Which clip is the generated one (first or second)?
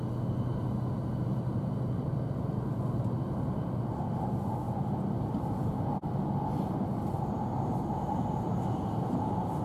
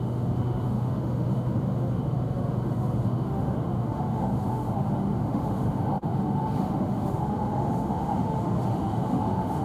second